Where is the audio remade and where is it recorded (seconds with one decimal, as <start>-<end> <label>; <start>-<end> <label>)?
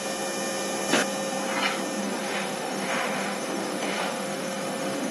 0.0-2.0 recorded; 2.0-5.1 remade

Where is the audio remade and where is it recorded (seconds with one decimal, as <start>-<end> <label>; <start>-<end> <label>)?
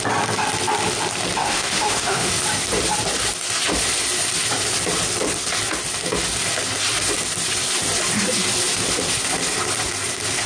0.0-1.4 recorded; 1.4-2.3 remade; 2.3-10.5 recorded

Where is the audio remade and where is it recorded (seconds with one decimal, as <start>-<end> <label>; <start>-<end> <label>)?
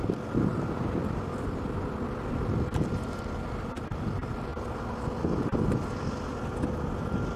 0.0-7.4 recorded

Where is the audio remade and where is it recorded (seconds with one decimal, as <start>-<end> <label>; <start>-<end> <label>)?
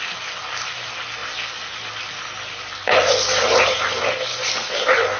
0.0-5.2 recorded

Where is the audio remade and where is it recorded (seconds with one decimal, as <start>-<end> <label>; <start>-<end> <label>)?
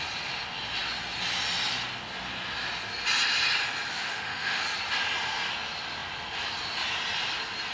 0.0-3.9 recorded; 3.9-4.6 remade; 4.6-7.7 recorded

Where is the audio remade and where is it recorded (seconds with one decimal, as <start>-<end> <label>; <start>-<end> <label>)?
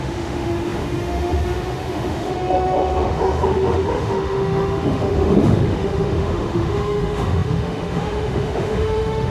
0.0-9.3 remade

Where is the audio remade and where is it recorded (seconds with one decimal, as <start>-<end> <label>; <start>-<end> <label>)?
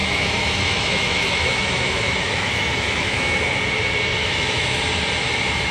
0.0-3.4 remade; 3.4-4.2 recorded; 4.2-4.8 remade; 4.8-5.7 recorded